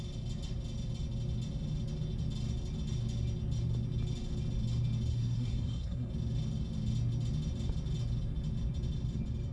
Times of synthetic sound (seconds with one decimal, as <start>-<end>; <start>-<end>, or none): 5.1-6.1